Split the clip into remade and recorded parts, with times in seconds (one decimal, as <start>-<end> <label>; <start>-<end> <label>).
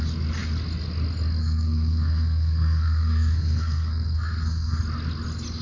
0.0-1.4 recorded; 1.4-4.8 remade; 4.8-5.6 recorded